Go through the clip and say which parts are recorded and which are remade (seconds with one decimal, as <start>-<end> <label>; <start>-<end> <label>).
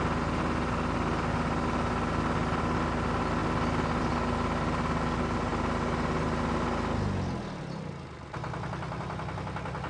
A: 0.0-9.9 recorded